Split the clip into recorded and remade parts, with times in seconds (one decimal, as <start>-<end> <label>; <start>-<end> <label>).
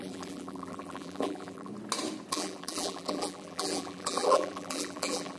0.0-1.7 remade; 1.7-2.3 recorded; 2.3-5.4 remade